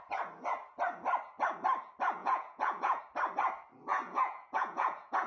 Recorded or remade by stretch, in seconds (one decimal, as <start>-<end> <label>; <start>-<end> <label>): 0.0-2.2 recorded; 2.2-3.0 remade; 3.0-3.9 recorded; 3.9-5.3 remade